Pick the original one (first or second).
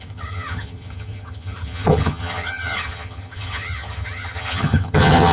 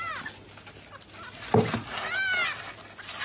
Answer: second